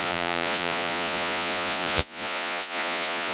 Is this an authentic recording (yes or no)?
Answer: no